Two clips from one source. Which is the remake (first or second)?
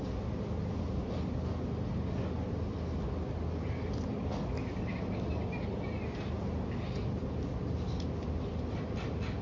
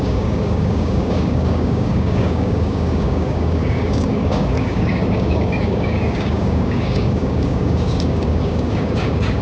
second